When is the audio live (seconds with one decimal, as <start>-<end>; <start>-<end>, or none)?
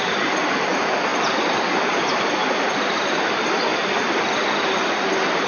0.0-1.1; 2.3-3.7; 5.0-5.5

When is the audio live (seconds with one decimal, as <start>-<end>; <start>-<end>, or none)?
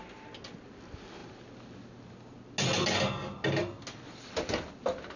0.0-5.2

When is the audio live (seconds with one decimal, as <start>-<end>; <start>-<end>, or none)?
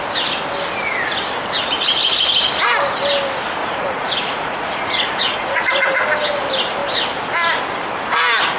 0.0-3.6; 5.6-8.6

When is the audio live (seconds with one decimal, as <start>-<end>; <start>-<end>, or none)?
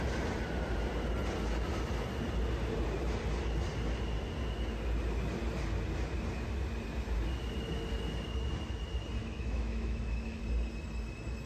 0.0-9.2; 10.4-11.5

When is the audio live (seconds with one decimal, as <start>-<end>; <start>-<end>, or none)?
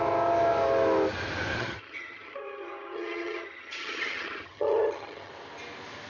0.0-1.6; 5.3-6.1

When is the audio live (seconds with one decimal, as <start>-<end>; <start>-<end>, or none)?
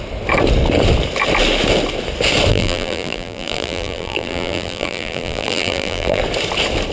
0.0-2.5; 6.2-6.9